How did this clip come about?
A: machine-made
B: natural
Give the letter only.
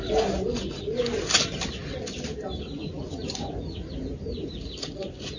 B